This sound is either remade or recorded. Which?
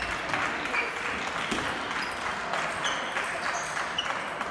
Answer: recorded